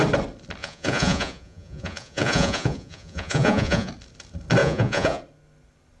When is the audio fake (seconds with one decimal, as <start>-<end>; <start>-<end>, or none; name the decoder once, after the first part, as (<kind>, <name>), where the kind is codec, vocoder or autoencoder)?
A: 0.6-3.9 (vocoder, Vocos); 4.6-5.2